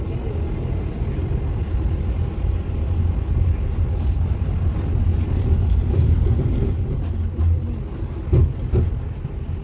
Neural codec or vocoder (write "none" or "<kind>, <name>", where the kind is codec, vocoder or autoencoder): none